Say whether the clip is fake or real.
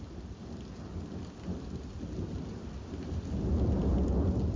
real